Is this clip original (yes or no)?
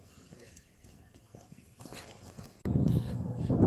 no